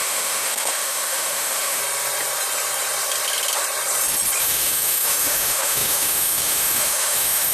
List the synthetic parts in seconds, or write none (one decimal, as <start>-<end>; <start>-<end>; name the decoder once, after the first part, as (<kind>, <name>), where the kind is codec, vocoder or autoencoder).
0.0-1.8 (autoencoder, DAC-VAE); 4.4-7.5